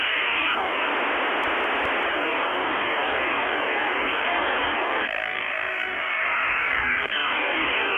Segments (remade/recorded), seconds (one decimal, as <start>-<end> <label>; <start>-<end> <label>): 0.0-0.9 remade; 0.9-2.1 recorded; 2.1-8.0 remade